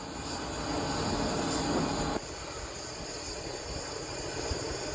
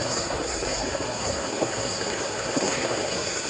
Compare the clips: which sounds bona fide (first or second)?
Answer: first